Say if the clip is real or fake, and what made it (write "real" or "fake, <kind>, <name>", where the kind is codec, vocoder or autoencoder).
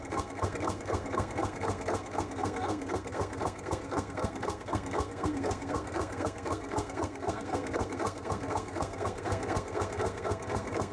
fake, codec, SNAC